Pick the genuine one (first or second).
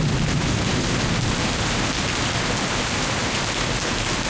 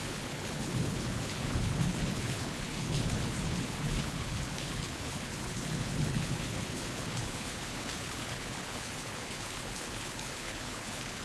first